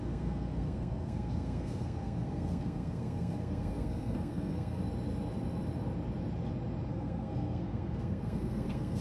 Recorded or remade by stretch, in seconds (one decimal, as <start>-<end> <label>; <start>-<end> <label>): 0.0-4.8 remade; 4.8-6.9 recorded; 6.9-9.0 remade